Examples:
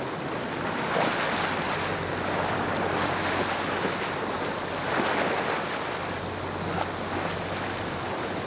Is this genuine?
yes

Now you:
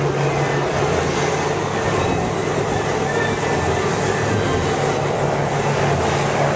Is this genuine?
yes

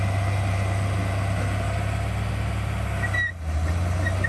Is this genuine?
yes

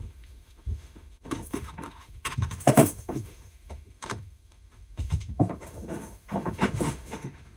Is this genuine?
no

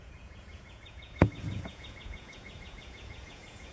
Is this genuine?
no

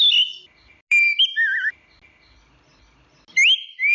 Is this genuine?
yes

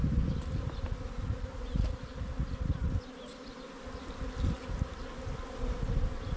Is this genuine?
yes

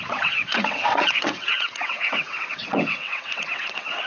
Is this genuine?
no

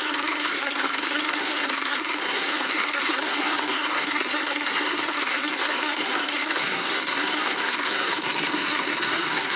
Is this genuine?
no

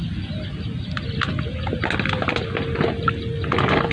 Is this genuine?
yes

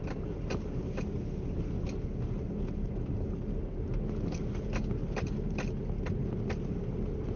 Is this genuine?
yes